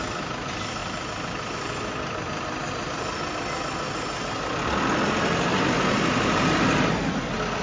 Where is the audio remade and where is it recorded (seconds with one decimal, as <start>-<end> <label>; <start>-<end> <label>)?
0.0-7.6 recorded